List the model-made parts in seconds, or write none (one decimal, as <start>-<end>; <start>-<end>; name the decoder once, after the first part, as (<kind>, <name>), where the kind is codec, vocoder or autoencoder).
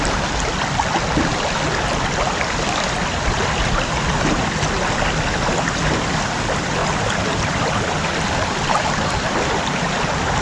none